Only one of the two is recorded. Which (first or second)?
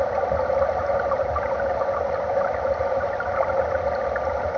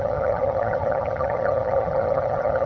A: first